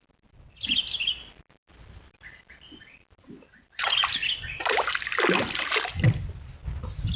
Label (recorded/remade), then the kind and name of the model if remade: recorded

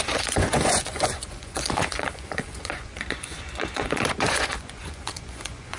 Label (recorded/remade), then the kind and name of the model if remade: remade, vocoder, Vocos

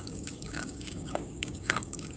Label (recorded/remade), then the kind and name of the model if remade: remade, codec, DAC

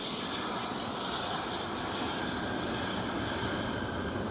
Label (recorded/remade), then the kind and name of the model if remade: recorded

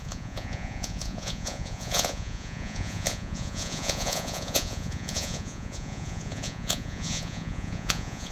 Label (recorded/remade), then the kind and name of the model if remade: remade, vocoder, Vocos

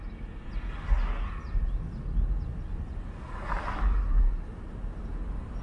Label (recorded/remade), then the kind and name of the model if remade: recorded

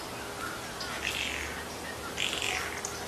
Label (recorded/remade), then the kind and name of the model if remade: recorded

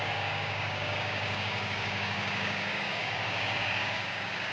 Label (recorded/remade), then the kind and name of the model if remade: remade, codec, DAC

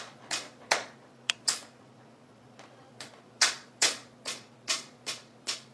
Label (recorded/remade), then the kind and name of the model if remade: remade, vocoder, Vocos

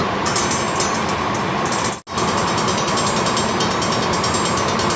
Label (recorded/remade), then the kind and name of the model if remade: recorded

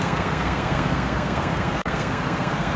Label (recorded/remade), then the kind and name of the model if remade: remade, codec, SNAC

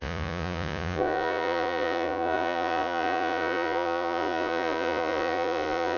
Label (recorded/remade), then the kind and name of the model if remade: remade, vocoder, Vocos